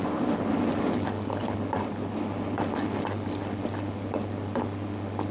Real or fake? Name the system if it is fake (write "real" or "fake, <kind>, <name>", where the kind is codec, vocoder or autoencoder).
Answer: real